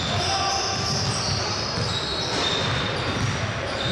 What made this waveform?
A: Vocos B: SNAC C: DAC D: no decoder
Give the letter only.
D